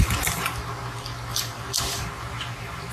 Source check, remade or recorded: remade